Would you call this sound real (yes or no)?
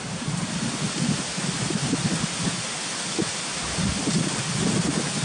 yes